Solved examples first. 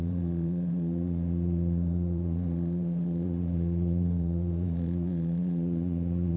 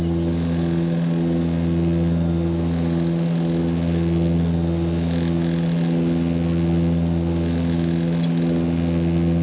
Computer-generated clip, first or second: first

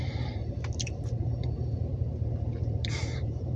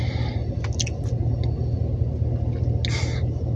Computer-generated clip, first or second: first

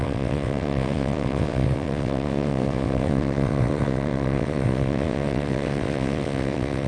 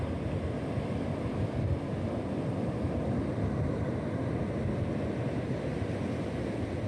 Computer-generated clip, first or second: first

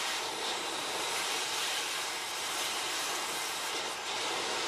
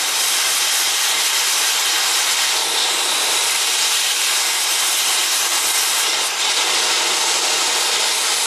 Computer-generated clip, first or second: first